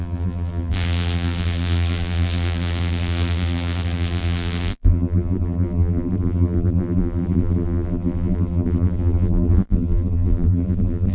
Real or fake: fake